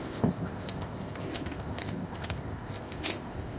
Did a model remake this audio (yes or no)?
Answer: yes